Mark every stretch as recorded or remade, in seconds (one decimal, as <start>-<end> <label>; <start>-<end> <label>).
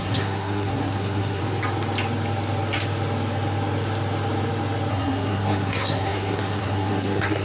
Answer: 0.0-1.4 remade; 1.4-4.9 recorded; 4.9-7.4 remade